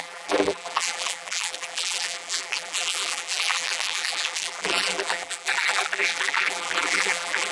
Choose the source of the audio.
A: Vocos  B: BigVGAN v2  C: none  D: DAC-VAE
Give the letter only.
B